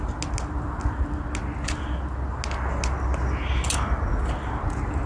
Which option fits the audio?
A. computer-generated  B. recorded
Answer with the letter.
B